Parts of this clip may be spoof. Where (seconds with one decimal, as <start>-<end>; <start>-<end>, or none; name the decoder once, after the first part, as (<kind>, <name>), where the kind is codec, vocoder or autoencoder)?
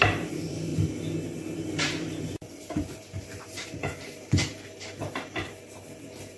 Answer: 0.0-0.7 (vocoder, BigVGAN v2); 1.6-6.4